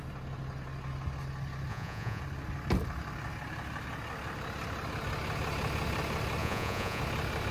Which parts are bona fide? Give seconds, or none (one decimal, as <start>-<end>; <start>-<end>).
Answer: 0.0-1.7; 2.2-6.4; 7.0-7.5